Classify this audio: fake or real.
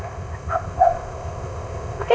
fake